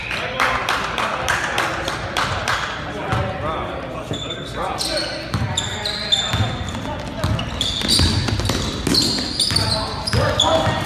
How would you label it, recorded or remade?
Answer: recorded